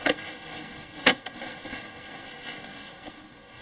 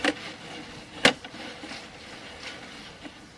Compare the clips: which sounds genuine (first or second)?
second